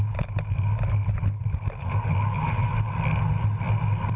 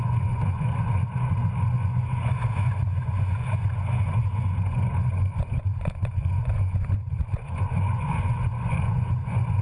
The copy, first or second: second